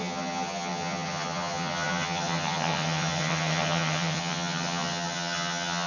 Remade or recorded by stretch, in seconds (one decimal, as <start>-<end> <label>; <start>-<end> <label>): 0.0-5.9 remade